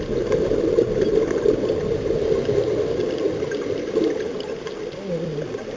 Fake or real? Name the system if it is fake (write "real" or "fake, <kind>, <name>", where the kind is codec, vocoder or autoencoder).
real